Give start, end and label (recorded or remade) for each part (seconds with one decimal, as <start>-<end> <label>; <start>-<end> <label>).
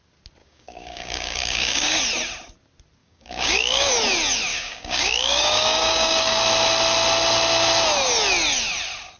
0.0-0.4 recorded; 0.4-2.0 remade; 2.0-3.0 recorded; 3.0-3.9 remade; 3.9-4.5 recorded; 4.5-6.4 remade; 6.4-9.2 recorded